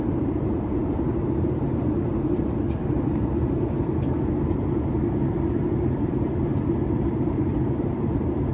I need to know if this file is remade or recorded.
remade